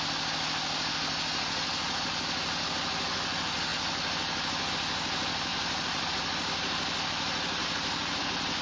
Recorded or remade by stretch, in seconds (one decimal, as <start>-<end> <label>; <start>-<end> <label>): 0.0-5.5 recorded; 5.5-6.1 remade; 6.1-7.6 recorded; 7.6-8.2 remade; 8.2-8.6 recorded